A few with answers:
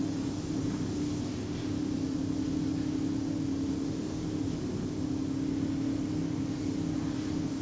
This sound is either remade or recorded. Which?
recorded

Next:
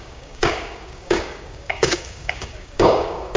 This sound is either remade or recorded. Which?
remade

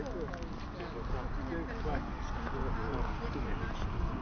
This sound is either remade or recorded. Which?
recorded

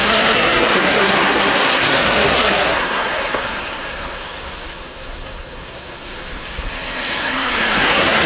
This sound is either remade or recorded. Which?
remade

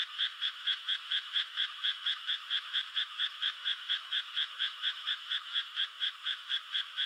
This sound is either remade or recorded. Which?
remade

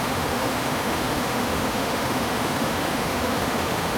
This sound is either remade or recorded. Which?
remade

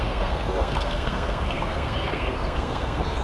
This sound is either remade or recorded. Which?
remade